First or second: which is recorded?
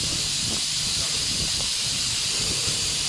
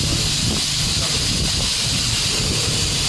second